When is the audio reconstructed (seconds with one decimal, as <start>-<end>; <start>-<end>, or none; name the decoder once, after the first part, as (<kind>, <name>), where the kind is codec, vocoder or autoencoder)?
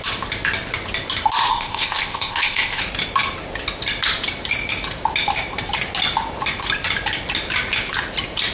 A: 1.5-2.8 (codec, ZipCodec)